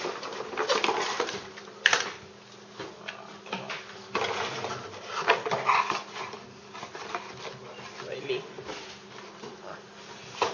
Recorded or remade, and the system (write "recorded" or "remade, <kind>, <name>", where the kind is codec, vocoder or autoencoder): recorded